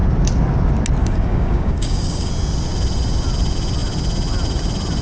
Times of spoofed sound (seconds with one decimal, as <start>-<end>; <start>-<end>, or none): 1.0-2.3